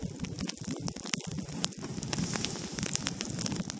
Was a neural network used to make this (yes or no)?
no